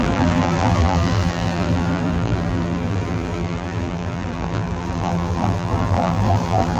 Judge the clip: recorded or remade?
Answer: remade